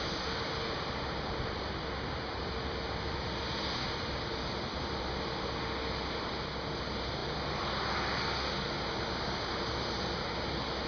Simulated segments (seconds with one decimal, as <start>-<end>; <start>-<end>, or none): none